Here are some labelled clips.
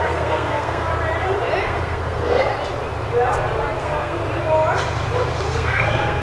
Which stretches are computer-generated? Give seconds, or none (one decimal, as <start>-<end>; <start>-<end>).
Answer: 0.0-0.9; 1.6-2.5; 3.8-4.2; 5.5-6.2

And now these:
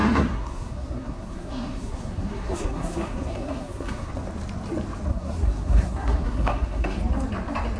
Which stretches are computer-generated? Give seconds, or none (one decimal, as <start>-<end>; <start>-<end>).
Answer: 0.0-4.1; 5.1-7.0

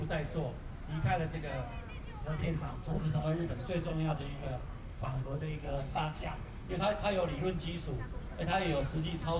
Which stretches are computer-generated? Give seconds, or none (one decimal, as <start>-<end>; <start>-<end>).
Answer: 2.4-3.5; 3.9-6.7